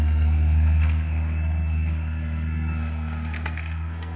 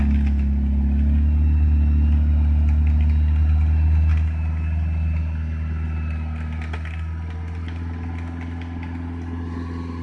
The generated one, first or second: first